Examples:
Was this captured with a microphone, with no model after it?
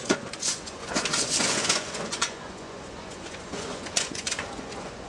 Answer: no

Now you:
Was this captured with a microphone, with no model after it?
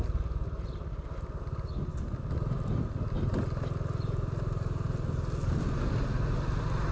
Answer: yes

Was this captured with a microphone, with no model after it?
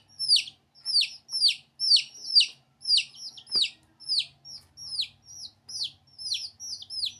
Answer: yes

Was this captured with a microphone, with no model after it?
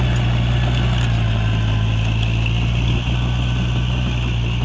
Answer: yes